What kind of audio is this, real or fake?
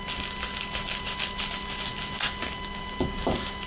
real